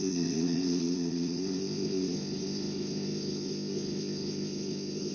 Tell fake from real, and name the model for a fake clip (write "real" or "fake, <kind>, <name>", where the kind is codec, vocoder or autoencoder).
fake, codec, ZipCodec